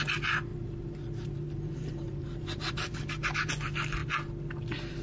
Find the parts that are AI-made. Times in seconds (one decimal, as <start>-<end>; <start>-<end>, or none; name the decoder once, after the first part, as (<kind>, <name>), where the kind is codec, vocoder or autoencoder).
0.5-3.5 (vocoder, BigVGAN v2)